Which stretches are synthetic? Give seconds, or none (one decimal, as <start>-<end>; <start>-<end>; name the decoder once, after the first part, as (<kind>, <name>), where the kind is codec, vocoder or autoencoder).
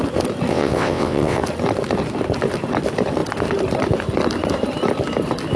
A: 0.5-1.4 (vocoder, WaveNeXt)